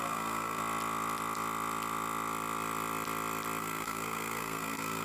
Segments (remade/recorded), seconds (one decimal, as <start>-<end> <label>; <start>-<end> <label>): 0.0-0.6 remade; 0.6-3.6 recorded; 3.6-5.0 remade